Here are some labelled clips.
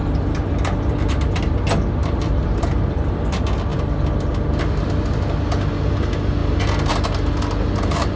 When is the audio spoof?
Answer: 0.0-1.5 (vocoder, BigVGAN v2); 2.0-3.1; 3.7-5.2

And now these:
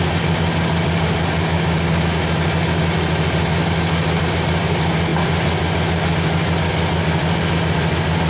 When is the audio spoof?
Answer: none

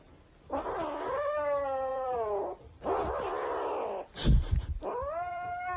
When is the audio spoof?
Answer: 1.9-5.8 (vocoder, BigVGAN v2)

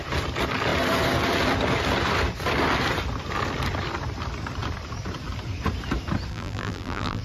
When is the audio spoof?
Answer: 6.3-7.2 (vocoder, BigVGAN v2)

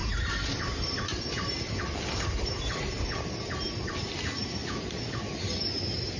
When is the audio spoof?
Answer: none

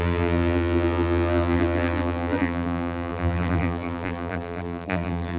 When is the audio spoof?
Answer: 0.0-5.4 (vocoder, BigVGAN v2)